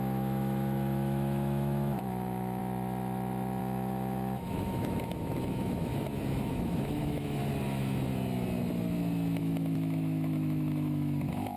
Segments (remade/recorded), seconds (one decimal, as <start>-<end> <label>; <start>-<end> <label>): 0.0-2.6 remade; 2.6-3.6 recorded; 3.6-5.9 remade; 5.9-6.5 recorded; 6.5-7.4 remade; 7.4-9.4 recorded; 9.4-11.6 remade